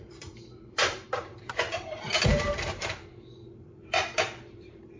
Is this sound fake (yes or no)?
yes